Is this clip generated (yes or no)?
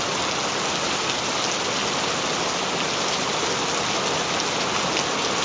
no